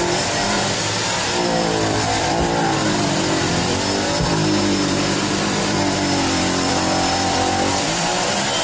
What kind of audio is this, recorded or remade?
remade